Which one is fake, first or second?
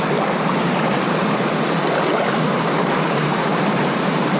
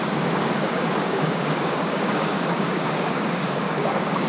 second